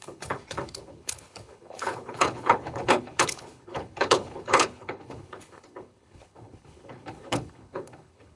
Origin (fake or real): fake